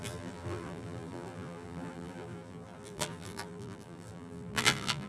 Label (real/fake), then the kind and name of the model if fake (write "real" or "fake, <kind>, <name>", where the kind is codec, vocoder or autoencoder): fake, vocoder, BigVGAN v2